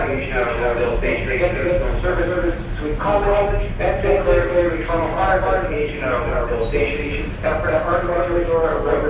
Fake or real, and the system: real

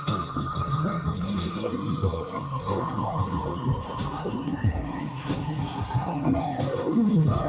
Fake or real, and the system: fake, codec, SNAC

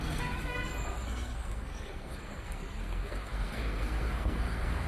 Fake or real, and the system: fake, codec, SNAC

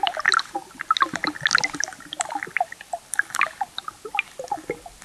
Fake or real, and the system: real